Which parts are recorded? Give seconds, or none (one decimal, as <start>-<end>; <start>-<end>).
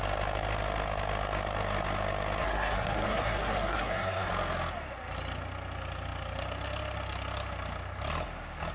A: 0.0-2.4; 4.3-8.7